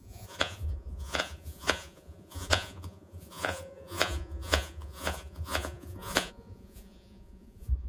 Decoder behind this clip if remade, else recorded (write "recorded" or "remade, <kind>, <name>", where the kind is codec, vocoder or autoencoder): remade, vocoder, Vocos